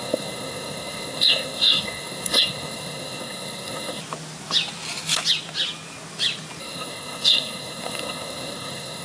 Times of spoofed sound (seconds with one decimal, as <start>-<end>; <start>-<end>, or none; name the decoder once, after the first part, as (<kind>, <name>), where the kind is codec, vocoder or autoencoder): 0.0-4.0 (codec, SNAC); 6.6-9.0